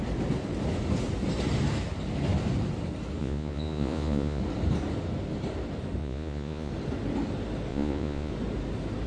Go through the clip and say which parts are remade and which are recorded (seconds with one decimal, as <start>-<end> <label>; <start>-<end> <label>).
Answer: 0.0-3.2 recorded; 3.2-4.4 remade; 4.4-6.0 recorded; 6.0-6.7 remade; 6.7-7.7 recorded; 7.7-8.3 remade; 8.3-9.1 recorded